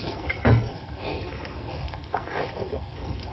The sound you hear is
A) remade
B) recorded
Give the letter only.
A